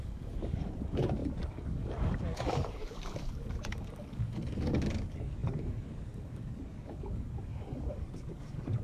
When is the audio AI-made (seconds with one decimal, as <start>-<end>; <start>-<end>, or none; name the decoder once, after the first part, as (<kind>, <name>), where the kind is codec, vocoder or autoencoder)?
0.0-8.8 (codec, DAC)